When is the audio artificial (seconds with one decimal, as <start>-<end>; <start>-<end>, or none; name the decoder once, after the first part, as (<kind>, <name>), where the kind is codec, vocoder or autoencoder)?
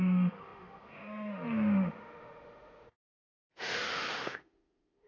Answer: 0.0-5.1 (autoencoder, DAC-VAE)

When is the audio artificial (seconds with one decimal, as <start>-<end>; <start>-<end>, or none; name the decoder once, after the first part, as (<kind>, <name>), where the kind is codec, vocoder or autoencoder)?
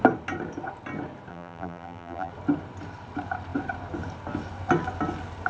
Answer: 1.3-2.3 (vocoder, BigVGAN v2)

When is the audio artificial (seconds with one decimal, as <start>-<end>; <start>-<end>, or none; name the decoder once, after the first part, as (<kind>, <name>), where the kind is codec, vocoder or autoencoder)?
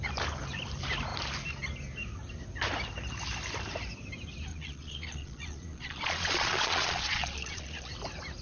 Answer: 4.5-7.9 (vocoder, Vocos)